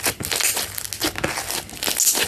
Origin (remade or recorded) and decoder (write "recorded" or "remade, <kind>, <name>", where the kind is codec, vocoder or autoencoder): recorded